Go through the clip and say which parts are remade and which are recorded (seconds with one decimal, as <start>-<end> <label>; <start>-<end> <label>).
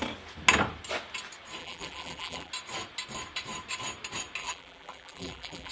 0.0-1.6 recorded; 1.6-2.5 remade; 2.5-4.4 recorded; 4.4-5.7 remade